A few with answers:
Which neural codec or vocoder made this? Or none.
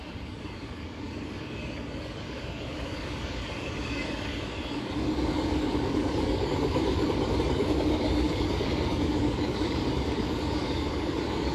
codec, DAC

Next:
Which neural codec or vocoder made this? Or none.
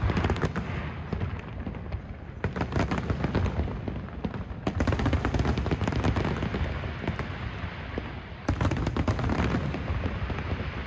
none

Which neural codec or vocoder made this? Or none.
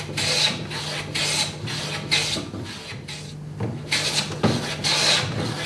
none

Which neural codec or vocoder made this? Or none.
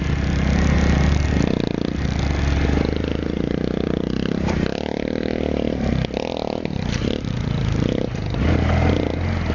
none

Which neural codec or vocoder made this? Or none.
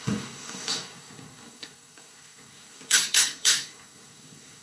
codec, SNAC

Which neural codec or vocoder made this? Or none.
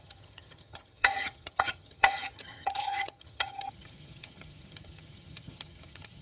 vocoder, HiFi-GAN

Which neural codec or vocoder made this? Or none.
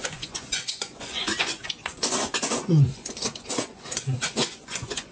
vocoder, Vocos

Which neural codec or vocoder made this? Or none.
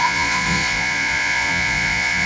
vocoder, Vocos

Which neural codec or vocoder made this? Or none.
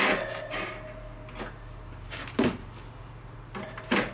none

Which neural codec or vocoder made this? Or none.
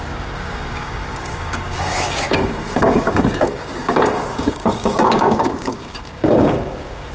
codec, DAC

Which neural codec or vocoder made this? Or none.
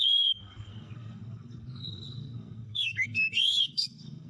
codec, SNAC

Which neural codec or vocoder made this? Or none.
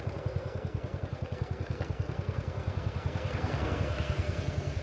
codec, SNAC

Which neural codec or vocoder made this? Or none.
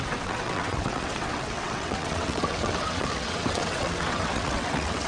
vocoder, WaveNeXt